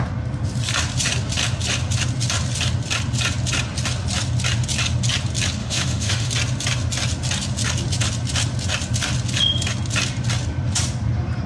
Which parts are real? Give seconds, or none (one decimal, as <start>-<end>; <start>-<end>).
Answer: 0.0-5.6; 6.3-11.5